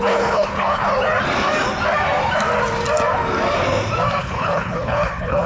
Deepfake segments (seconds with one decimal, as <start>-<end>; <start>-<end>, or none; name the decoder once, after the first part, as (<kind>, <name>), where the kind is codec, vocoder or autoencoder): 0.0-0.9 (codec, HILCodec); 4.2-5.5